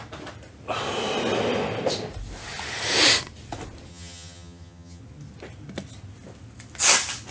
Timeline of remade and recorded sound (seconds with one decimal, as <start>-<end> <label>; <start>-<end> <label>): 0.0-3.9 recorded; 3.9-5.0 remade; 5.0-7.3 recorded